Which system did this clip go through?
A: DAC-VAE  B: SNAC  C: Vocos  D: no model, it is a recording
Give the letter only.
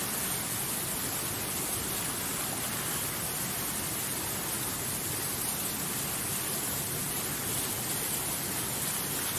D